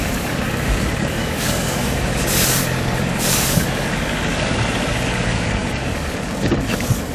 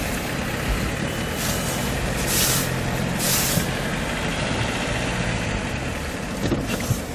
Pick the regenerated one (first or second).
first